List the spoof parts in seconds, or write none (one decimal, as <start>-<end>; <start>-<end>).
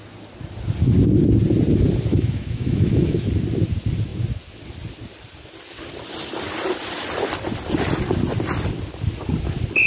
2.1-3.3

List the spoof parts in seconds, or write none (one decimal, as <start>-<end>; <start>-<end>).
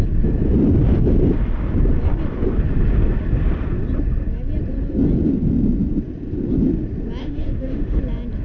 7.2-8.0